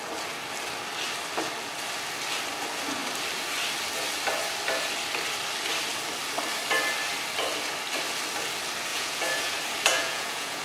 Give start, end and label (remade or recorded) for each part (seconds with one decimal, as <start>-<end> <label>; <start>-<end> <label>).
0.0-8.9 recorded; 8.9-9.5 remade; 9.5-9.9 recorded; 9.9-10.6 remade

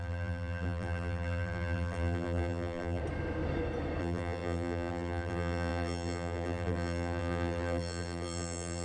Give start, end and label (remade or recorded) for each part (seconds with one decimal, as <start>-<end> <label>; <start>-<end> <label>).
0.0-3.0 remade; 3.0-4.0 recorded; 4.0-8.8 remade

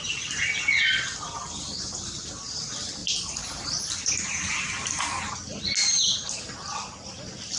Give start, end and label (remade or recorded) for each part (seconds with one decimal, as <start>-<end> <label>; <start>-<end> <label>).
0.0-3.0 recorded; 3.0-5.0 remade; 5.0-7.6 recorded

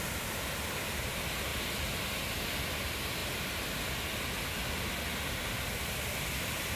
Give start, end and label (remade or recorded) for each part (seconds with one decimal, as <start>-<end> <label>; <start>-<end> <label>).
0.0-1.5 remade; 1.5-2.3 recorded; 2.3-3.2 remade; 3.2-6.8 recorded

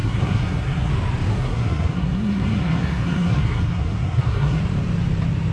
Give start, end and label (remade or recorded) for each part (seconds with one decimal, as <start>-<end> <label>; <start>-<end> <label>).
0.0-0.9 remade; 0.9-1.3 recorded; 1.3-4.6 remade; 4.6-5.5 recorded